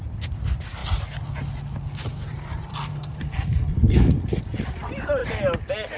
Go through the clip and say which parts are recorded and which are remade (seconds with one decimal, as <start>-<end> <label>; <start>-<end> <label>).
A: 0.0-2.7 recorded; 2.7-4.4 remade; 4.4-6.0 recorded